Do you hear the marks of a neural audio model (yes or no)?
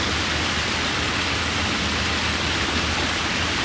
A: yes